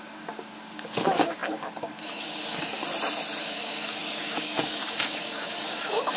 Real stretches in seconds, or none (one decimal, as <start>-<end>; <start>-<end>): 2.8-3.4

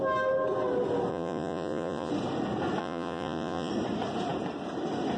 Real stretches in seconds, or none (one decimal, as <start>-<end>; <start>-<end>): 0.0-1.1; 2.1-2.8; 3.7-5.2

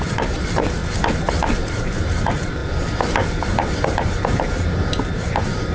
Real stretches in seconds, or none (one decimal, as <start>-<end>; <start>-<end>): 0.8-1.3; 2.6-3.8